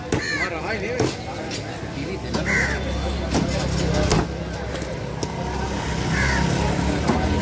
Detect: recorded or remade recorded